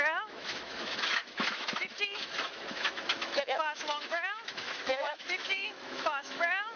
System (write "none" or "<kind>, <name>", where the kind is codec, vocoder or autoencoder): autoencoder, DAC-VAE